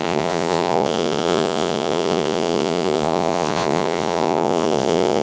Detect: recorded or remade remade